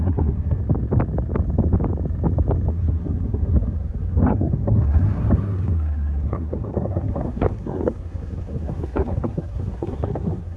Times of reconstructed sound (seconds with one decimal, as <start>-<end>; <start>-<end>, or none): 0.0-0.6; 2.7-10.6